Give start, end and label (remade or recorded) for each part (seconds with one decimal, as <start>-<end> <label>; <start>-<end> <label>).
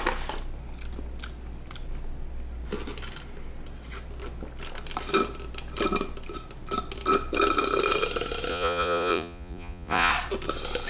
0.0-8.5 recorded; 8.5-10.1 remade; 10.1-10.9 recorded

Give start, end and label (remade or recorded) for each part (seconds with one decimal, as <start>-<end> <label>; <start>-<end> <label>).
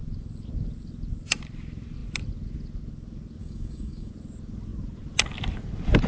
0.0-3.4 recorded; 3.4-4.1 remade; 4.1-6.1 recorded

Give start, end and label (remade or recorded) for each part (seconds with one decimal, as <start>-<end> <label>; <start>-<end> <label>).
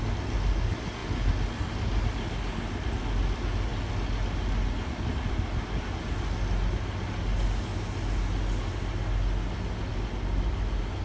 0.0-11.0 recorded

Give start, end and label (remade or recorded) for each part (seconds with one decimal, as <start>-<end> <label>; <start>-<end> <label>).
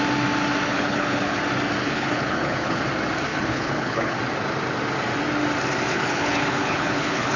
0.0-0.7 recorded; 0.7-1.4 remade; 1.4-1.8 recorded; 1.8-2.8 remade; 2.8-3.3 recorded; 3.3-4.2 remade; 4.2-5.9 recorded; 5.9-7.4 remade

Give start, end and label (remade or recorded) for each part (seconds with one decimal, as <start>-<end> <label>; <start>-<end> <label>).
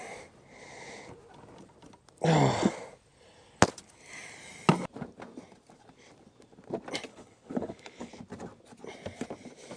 0.0-7.1 recorded; 7.1-8.1 remade; 8.1-9.8 recorded